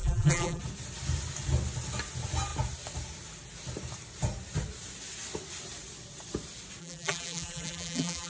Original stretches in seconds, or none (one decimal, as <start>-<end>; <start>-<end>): 0.6-6.8